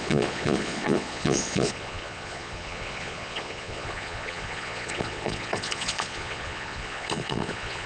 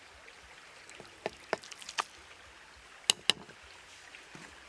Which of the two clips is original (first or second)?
second